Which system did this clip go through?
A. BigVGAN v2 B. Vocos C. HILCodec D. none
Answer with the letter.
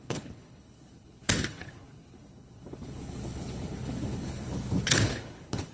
C